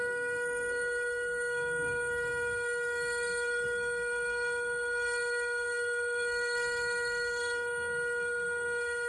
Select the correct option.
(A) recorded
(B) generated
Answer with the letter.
B